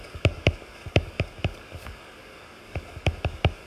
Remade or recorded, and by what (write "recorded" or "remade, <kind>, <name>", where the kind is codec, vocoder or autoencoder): remade, codec, DAC